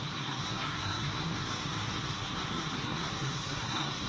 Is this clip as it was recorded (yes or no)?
no